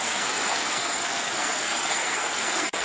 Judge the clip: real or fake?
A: fake